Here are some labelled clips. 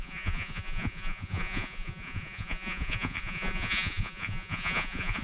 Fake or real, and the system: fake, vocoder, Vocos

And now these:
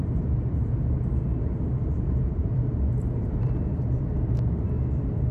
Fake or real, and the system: fake, vocoder, BigVGAN v2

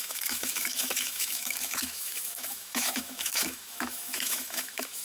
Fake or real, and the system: fake, autoencoder, DAC-VAE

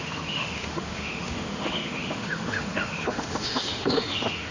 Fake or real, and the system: fake, autoencoder, DAC-VAE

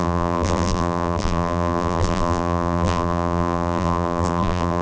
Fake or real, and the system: fake, vocoder, BigVGAN v2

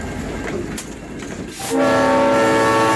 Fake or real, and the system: real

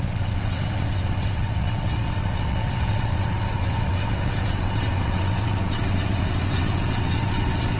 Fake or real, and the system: fake, vocoder, WaveNeXt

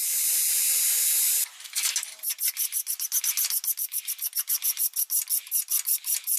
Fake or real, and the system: real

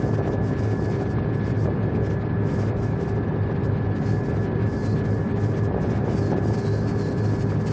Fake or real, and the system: real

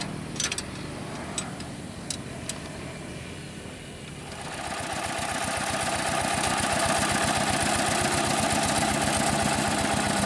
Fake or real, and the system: real